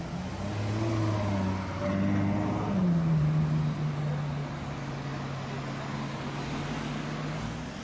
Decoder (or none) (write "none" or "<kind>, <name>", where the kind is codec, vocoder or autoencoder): none